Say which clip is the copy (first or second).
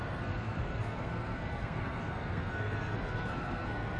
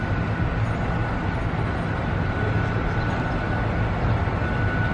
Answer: first